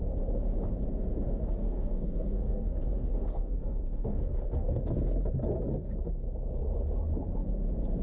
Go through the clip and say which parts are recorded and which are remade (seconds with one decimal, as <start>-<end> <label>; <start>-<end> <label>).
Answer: 0.0-1.6 recorded; 1.6-4.8 remade; 4.8-8.0 recorded